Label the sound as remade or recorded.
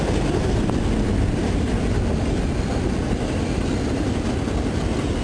recorded